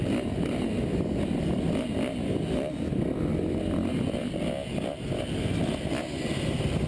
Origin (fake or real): real